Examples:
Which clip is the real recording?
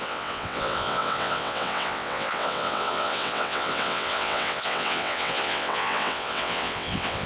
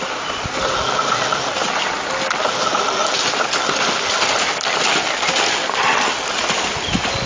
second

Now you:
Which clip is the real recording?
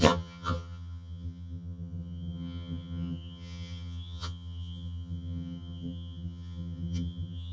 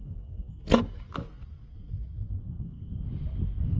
second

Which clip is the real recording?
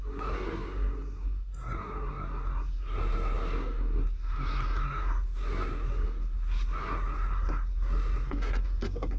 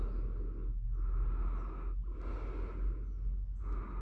second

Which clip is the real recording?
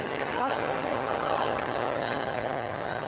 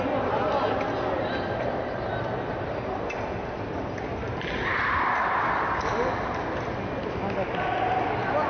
second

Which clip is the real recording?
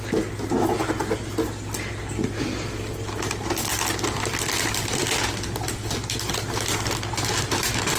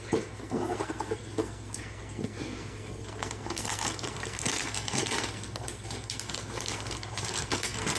first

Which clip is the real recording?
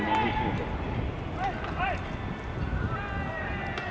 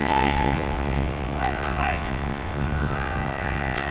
first